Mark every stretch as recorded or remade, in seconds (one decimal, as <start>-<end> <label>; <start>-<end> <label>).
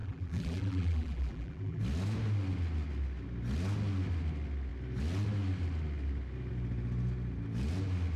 0.0-1.8 remade; 1.8-8.2 recorded